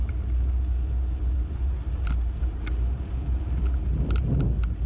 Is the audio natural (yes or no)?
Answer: yes